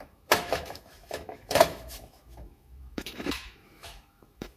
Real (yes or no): no